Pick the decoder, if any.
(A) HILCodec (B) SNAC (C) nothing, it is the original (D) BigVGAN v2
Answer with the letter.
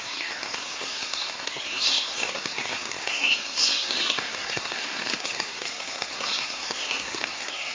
B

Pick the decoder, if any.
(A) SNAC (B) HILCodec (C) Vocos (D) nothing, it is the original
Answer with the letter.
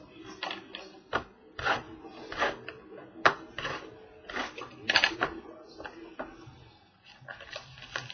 D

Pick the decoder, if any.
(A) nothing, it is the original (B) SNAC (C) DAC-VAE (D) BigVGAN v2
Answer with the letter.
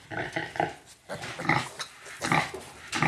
A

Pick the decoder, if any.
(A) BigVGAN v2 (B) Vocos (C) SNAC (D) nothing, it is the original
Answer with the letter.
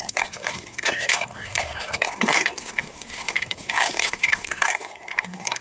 C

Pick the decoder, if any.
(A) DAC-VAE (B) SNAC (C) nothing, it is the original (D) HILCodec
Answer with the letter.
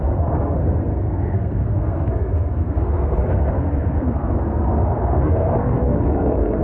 B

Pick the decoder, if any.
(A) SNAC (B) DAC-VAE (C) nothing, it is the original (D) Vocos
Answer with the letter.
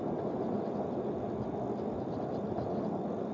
C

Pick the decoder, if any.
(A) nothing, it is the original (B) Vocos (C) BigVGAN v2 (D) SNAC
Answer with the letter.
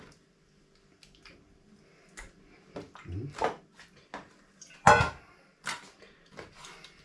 A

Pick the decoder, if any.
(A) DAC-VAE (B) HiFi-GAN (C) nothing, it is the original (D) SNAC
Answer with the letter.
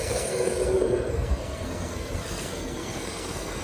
D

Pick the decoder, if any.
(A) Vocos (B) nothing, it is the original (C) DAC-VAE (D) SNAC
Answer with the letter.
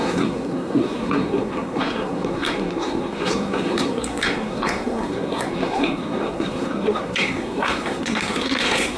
D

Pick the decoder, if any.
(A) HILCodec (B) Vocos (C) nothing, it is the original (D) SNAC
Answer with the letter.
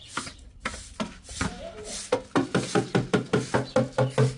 C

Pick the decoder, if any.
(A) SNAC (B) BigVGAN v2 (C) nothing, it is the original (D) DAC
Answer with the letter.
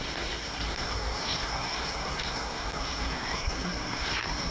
A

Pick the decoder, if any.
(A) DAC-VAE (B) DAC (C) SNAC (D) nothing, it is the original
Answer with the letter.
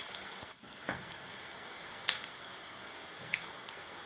C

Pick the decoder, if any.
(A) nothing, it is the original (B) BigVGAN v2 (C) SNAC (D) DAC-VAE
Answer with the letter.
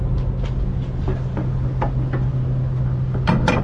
A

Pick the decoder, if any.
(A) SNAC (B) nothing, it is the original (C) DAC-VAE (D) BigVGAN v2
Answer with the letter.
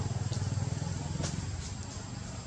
B